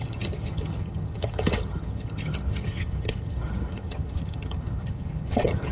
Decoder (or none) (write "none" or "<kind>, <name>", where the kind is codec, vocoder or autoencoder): vocoder, HiFi-GAN